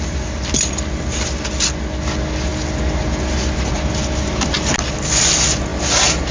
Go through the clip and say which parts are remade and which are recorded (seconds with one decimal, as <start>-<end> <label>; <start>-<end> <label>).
0.0-6.3 recorded